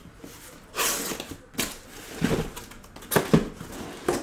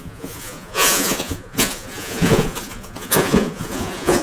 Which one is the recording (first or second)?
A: first